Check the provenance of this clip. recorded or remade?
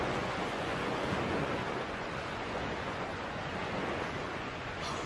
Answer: remade